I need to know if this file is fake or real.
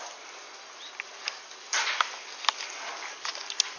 real